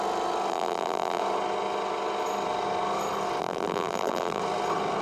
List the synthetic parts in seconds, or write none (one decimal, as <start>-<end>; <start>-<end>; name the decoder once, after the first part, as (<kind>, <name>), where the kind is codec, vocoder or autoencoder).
0.5-1.2 (vocoder, BigVGAN v2); 3.4-4.4